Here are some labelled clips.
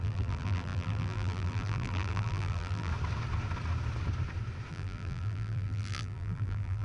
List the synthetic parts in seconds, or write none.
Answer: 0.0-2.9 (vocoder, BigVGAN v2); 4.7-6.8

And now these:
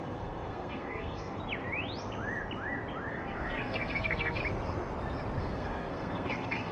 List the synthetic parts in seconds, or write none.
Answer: 0.0-1.4 (codec, SNAC); 3.1-4.4; 5.4-6.7

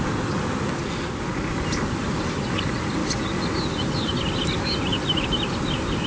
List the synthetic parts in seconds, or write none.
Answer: none